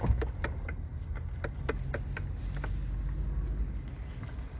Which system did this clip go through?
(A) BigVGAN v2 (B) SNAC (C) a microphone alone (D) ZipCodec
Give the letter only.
C